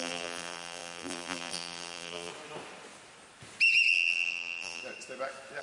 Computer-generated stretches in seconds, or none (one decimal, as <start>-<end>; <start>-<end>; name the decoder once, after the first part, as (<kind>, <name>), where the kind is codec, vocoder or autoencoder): 0.0-2.3 (vocoder, BigVGAN v2); 3.9-4.8